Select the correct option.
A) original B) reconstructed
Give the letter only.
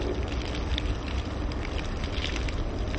A